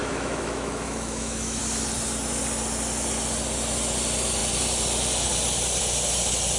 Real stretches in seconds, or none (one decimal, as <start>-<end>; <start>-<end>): 1.6-6.6